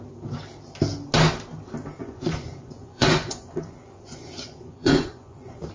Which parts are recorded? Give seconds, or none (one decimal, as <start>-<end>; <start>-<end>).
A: 0.0-2.0